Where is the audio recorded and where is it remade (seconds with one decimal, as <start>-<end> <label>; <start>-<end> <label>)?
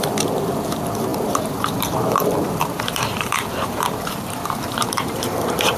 0.0-5.8 remade